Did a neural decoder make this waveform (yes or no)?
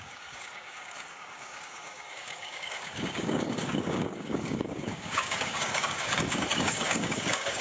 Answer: yes